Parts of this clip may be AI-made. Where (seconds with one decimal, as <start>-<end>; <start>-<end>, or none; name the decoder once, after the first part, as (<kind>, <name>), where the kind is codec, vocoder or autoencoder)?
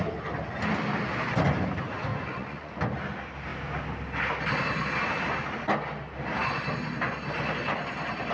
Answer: 2.1-2.7 (vocoder, Vocos)